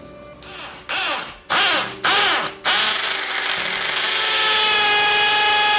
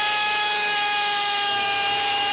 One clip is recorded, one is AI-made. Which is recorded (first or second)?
first